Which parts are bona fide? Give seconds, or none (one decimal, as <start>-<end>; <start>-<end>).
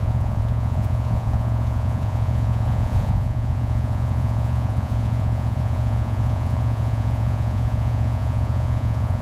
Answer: none